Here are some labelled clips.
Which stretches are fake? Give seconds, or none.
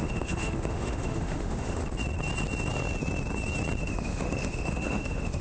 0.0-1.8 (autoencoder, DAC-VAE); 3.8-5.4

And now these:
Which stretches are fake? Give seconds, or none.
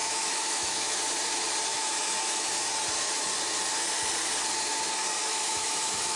0.0-1.0 (autoencoder, DAC-VAE); 1.7-2.5; 5.2-6.2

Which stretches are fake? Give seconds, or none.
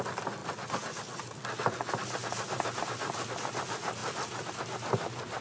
none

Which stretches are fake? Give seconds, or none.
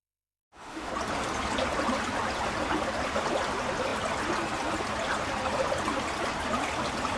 0.0-0.9 (autoencoder, DAC-VAE)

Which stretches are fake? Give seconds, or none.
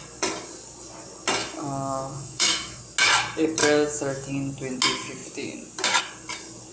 1.4-2.8 (autoencoder, DAC-VAE); 3.6-4.3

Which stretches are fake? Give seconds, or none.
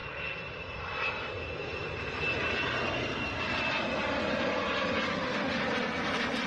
5.1-5.6 (autoencoder, DAC-VAE)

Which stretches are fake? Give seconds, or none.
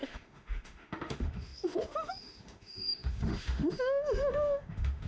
0.0-5.1 (autoencoder, DAC-VAE)